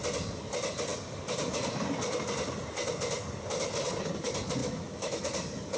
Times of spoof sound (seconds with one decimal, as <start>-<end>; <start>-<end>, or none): 4.6-5.2